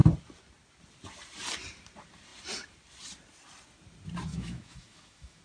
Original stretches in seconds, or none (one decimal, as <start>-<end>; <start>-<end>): 0.0-4.3